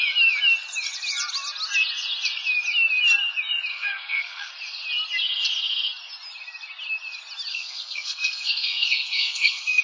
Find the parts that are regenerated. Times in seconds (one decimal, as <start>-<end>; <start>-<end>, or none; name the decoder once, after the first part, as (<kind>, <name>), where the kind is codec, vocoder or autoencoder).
3.7-4.5 (codec, SNAC); 7.5-9.8